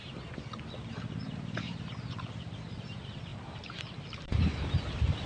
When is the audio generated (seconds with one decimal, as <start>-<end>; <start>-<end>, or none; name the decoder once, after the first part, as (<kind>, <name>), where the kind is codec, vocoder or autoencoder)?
2.4-4.5 (vocoder, BigVGAN v2)